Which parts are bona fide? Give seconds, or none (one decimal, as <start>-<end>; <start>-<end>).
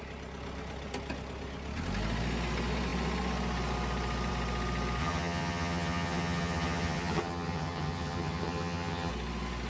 0.0-5.0; 9.1-9.7